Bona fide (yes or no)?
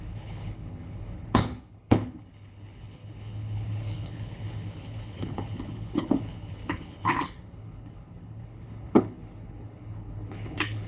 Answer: no